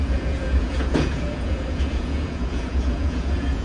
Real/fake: fake